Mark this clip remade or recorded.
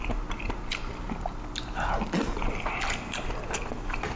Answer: recorded